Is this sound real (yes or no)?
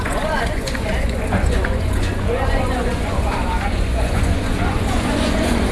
no